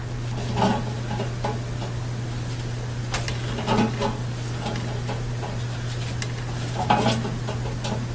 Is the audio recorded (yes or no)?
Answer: yes